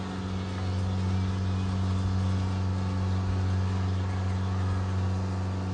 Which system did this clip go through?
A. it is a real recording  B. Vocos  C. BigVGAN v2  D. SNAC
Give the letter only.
A